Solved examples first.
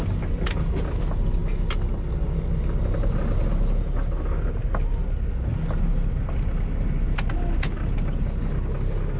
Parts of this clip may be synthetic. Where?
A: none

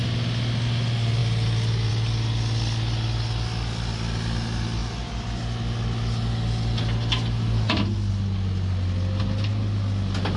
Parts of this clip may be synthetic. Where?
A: none

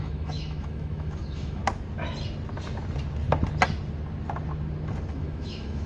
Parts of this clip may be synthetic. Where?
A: 0.0-1.6; 5.1-5.9

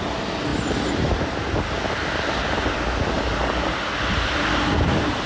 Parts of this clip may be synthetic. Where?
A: none

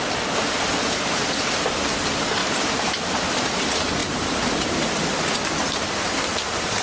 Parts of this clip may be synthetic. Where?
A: 2.4-3.6; 4.0-5.2